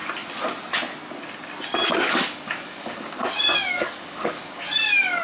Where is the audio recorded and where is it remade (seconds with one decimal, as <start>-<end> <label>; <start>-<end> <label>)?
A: 0.0-1.9 recorded; 1.9-5.2 remade